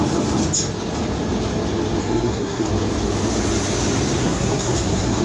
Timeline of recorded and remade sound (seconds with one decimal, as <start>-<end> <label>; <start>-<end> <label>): 0.0-2.0 recorded; 2.0-2.7 remade; 2.7-4.2 recorded; 4.2-5.2 remade